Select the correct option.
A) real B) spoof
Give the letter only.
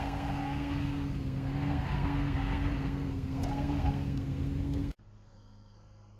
B